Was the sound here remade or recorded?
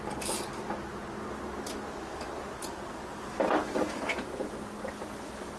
recorded